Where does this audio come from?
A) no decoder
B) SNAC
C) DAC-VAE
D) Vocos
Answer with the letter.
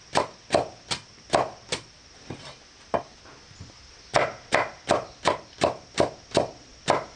A